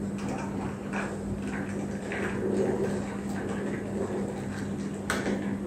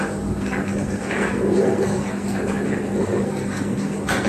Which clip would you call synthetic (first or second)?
second